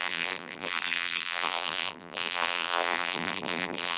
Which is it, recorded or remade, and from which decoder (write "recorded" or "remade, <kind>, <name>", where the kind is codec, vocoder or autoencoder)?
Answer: remade, vocoder, BigVGAN v2